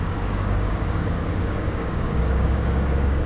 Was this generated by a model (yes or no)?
yes